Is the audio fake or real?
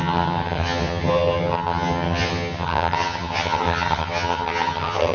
fake